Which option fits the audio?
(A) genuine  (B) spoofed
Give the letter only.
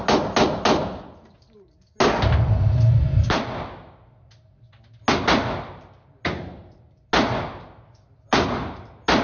A